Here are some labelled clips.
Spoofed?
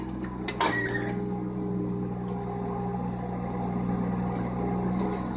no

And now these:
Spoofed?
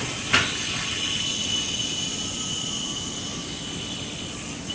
no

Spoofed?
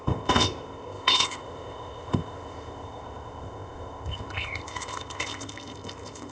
yes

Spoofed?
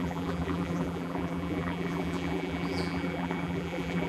yes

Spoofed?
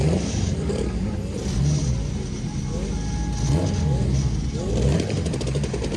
no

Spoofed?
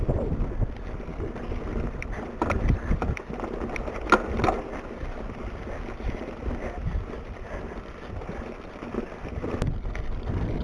no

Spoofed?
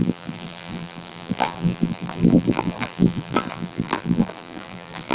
yes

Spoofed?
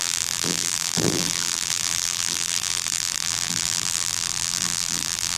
yes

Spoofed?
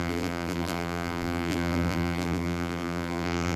yes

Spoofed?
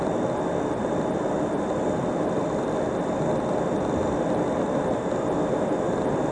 no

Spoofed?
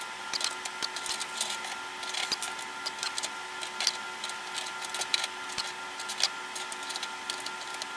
no